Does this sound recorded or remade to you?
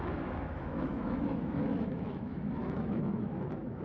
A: remade